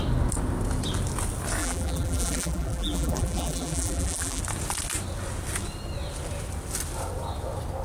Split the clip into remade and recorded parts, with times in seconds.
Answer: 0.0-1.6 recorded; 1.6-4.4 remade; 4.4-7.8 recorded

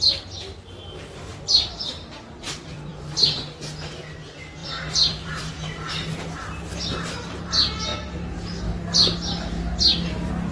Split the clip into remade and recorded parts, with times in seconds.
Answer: 0.0-1.3 recorded; 1.3-3.0 remade; 3.0-4.6 recorded; 4.6-5.5 remade; 5.5-10.5 recorded